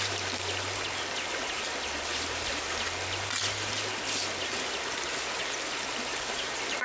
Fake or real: real